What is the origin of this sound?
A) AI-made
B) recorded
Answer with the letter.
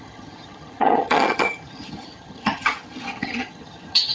A